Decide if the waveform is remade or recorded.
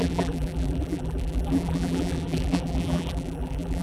remade